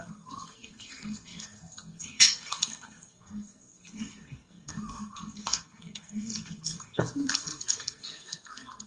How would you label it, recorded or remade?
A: remade